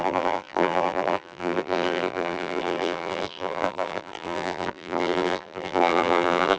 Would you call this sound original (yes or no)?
no